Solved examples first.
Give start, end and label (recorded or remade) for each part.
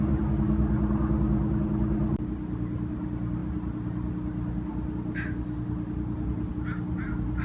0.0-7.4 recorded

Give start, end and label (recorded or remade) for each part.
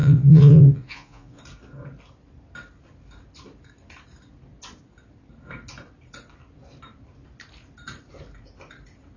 0.0-1.4 remade; 1.4-9.2 recorded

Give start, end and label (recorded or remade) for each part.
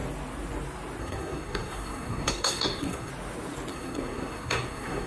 0.0-1.0 recorded; 1.0-3.1 remade; 3.1-3.7 recorded; 3.7-5.1 remade